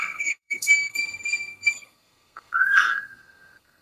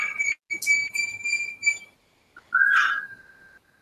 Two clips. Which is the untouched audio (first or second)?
second